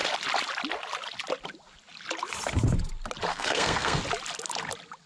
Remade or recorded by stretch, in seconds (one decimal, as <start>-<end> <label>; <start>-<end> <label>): 0.0-3.3 recorded; 3.3-4.0 remade; 4.0-5.1 recorded